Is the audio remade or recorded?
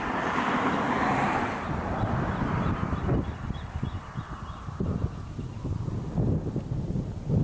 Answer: remade